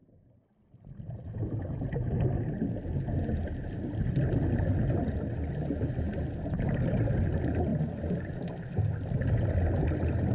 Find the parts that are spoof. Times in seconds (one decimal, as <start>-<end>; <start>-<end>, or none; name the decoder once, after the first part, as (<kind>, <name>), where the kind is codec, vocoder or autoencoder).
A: 7.7-8.3 (vocoder, BigVGAN v2)